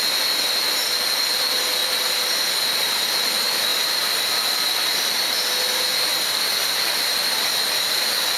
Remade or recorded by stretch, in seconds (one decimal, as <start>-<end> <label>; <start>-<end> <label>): 0.0-1.8 recorded; 1.8-3.0 remade; 3.0-3.7 recorded; 3.7-4.3 remade; 4.3-8.4 recorded